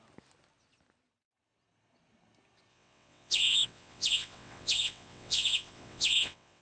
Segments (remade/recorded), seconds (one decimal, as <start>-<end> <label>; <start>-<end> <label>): 0.0-2.7 recorded; 2.7-6.6 remade